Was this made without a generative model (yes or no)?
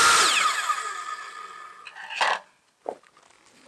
yes